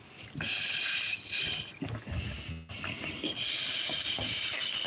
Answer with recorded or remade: recorded